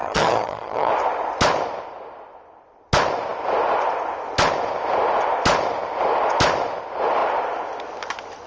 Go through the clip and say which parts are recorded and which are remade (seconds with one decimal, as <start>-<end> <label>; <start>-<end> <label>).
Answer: 0.0-0.9 remade; 0.9-8.5 recorded